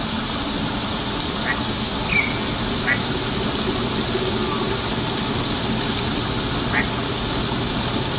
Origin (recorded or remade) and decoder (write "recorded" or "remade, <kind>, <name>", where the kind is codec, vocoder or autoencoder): recorded